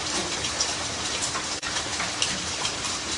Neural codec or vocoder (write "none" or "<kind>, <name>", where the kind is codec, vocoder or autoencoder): vocoder, BigVGAN v2